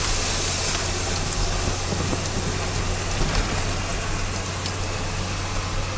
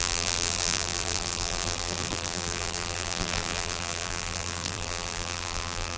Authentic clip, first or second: first